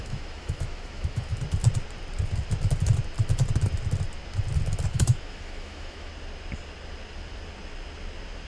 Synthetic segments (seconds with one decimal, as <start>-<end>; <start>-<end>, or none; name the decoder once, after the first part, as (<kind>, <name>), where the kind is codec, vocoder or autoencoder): 0.0-1.3 (autoencoder, DAC-VAE); 4.9-6.1